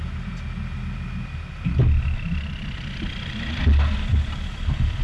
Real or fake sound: real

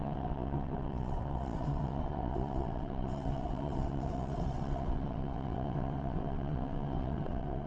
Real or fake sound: fake